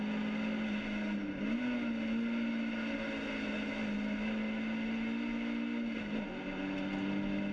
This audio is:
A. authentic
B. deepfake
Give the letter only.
A